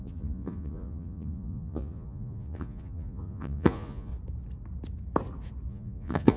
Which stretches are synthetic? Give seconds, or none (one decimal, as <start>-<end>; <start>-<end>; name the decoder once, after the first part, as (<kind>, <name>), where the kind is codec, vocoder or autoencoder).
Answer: 0.0-4.1 (vocoder, Vocos); 5.7-6.4